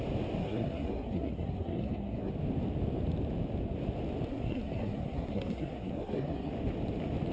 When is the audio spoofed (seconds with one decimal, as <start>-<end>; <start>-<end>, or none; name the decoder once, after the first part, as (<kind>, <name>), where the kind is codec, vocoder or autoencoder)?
0.4-2.3 (codec, SNAC); 4.3-6.5